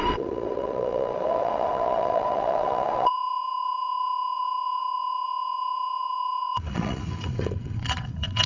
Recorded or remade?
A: remade